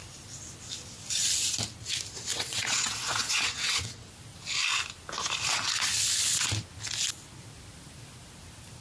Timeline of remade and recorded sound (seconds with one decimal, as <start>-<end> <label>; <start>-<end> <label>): 0.0-2.3 recorded; 2.3-4.1 remade; 4.1-8.8 recorded